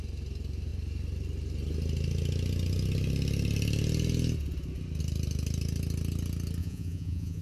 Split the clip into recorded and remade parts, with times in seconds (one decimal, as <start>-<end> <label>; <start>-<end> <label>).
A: 0.0-6.6 recorded; 6.6-7.4 remade